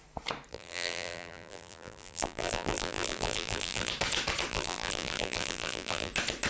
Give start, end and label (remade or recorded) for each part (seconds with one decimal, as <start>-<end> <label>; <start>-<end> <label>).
0.0-0.5 recorded; 0.5-3.9 remade; 3.9-4.5 recorded; 4.5-6.1 remade; 6.1-6.5 recorded